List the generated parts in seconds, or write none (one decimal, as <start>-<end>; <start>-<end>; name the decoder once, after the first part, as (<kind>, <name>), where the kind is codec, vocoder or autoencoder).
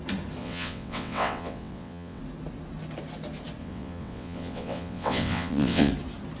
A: 0.4-2.2 (vocoder, WaveNeXt); 3.6-5.9